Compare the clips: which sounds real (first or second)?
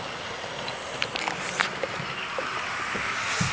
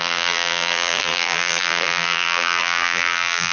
first